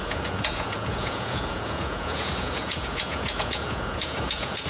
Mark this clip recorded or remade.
remade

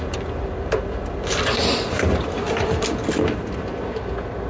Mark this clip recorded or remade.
recorded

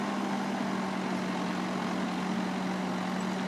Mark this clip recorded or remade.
recorded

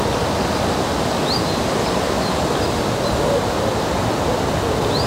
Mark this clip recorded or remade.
recorded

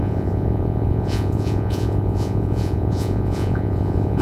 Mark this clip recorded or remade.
remade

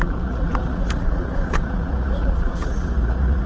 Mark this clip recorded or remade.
remade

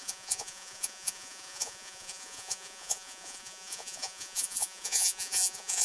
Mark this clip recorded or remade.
remade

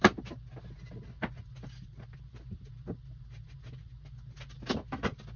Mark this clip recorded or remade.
recorded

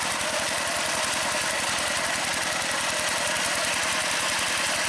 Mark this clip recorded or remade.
recorded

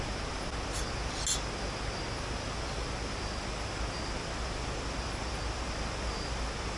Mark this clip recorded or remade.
recorded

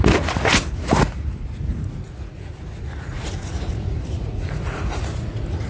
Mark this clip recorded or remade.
remade